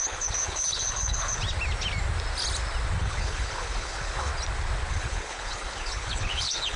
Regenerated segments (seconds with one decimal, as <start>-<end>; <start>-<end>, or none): 0.0-1.4; 3.0-4.3; 4.9-6.8